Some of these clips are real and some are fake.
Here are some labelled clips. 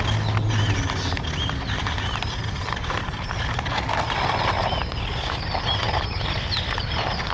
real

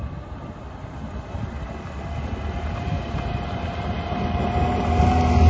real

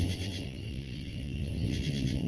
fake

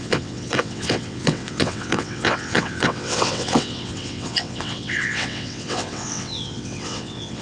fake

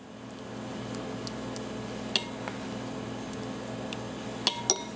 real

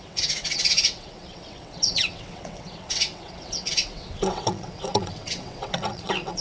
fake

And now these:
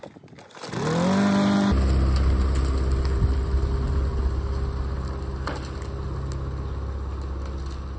real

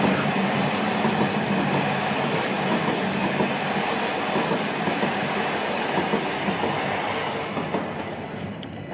real